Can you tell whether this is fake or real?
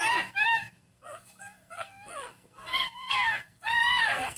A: fake